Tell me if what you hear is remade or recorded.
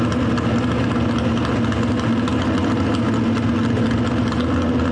recorded